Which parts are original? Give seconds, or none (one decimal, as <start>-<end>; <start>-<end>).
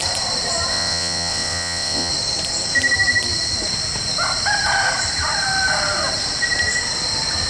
0.0-0.7; 2.1-7.5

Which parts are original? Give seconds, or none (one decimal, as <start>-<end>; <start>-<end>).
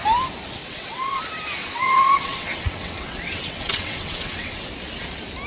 0.0-0.6; 1.2-1.6; 4.6-5.5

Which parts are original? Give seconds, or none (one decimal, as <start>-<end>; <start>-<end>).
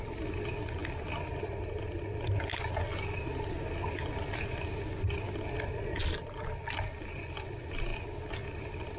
0.0-9.0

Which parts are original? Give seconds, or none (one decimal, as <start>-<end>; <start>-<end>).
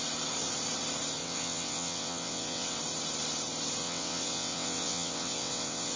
0.0-1.2; 2.8-3.8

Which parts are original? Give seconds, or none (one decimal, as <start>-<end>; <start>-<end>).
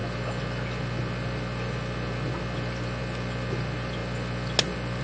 0.0-5.0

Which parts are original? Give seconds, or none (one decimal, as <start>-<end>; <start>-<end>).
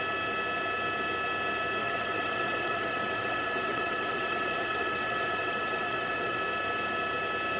0.0-1.8; 6.4-7.6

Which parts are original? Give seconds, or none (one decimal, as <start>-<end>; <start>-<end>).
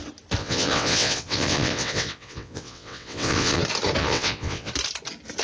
0.0-0.4; 3.6-4.0; 4.7-5.4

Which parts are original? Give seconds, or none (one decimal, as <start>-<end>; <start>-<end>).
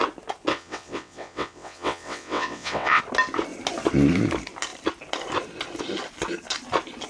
0.0-0.5; 3.0-7.1